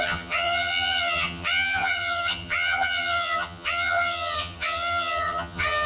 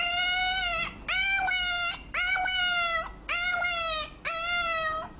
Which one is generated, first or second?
first